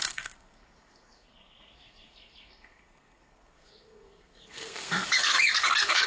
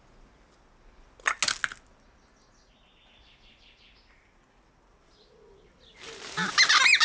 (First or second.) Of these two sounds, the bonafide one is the second